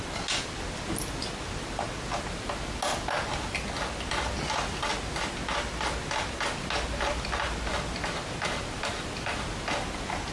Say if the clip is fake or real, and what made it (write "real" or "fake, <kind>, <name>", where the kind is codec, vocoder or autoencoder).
real